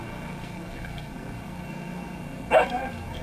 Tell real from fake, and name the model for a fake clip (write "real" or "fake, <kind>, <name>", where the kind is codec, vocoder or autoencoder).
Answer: fake, codec, SNAC